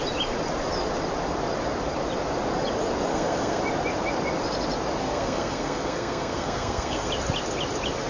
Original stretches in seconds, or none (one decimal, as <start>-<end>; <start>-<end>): 0.0-3.1; 3.6-5.0; 7.1-8.1